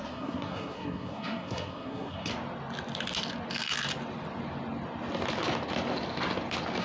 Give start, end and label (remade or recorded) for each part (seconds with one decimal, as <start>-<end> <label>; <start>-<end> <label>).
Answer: 0.0-2.3 remade; 2.3-6.8 recorded